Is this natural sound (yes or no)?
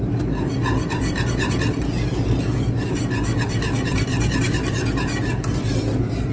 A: yes